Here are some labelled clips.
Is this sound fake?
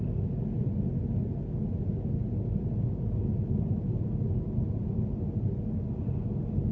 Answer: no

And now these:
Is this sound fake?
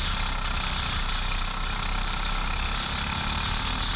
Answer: no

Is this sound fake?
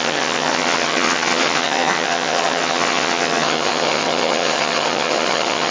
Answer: yes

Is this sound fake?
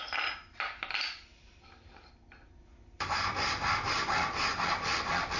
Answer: no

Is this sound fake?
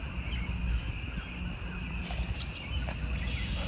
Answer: no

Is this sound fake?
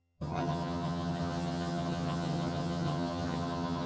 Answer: yes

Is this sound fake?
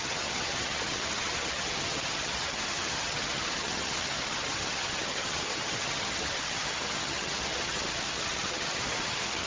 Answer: yes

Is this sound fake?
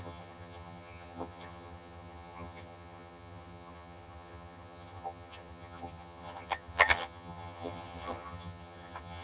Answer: yes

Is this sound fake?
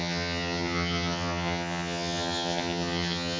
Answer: yes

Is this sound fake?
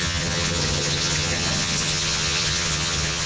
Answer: yes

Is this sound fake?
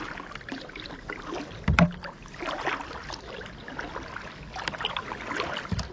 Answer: no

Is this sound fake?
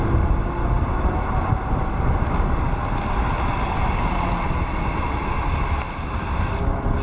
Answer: no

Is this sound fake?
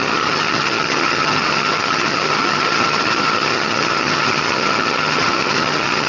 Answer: yes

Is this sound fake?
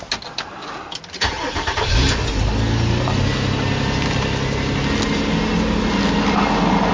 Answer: no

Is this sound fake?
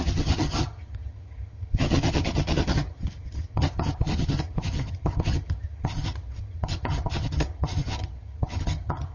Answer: yes